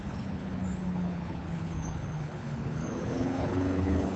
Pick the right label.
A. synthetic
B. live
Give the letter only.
A